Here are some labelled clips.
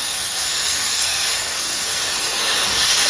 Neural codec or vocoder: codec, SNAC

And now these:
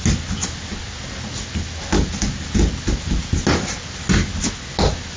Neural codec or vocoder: none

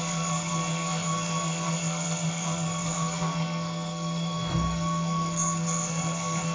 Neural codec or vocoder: codec, SNAC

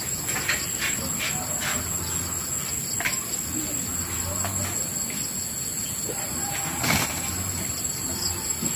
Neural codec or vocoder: none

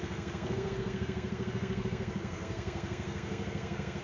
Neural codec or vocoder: codec, SNAC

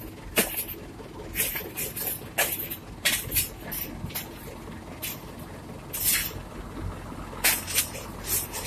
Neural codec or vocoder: none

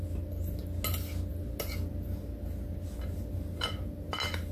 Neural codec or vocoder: none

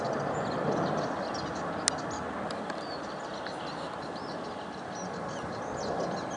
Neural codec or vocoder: none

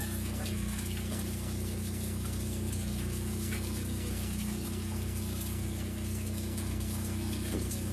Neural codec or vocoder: codec, SNAC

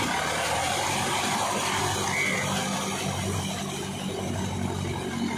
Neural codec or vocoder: none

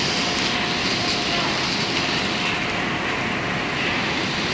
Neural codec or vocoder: none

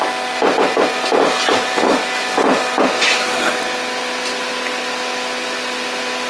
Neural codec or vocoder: none